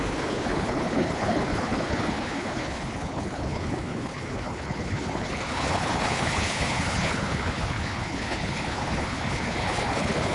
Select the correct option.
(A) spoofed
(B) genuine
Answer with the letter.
A